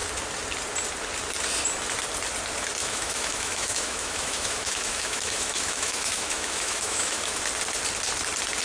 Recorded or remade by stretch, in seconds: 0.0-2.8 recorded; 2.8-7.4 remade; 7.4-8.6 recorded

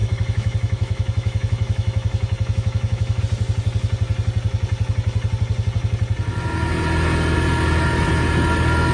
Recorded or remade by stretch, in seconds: 0.0-3.2 remade; 3.2-8.9 recorded

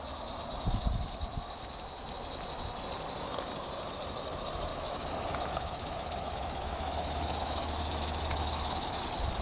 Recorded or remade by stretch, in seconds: 0.0-4.7 recorded; 4.7-9.0 remade; 9.0-9.4 recorded

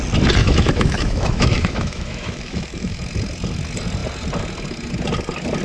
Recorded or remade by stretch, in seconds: 0.0-0.4 recorded; 0.4-3.0 remade; 3.0-5.6 recorded